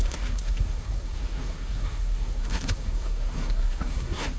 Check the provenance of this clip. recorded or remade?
remade